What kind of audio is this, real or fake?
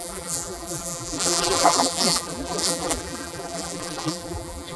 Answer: fake